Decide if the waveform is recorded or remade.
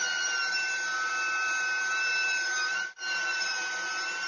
remade